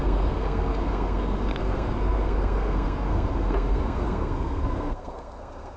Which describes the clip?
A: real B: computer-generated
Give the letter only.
B